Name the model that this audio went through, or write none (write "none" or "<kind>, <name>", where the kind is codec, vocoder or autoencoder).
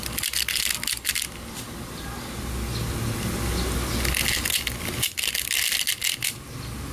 none